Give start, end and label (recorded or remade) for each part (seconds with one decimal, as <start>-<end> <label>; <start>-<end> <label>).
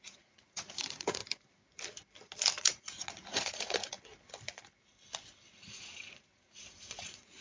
0.0-1.2 remade; 1.2-2.6 recorded; 2.6-4.1 remade; 4.1-5.5 recorded; 5.5-7.4 remade